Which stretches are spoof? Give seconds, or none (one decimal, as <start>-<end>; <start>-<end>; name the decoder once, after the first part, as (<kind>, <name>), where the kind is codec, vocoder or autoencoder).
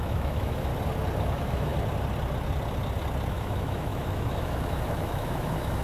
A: 0.0-0.7 (autoencoder, DAC-VAE); 1.2-1.7; 3.3-5.8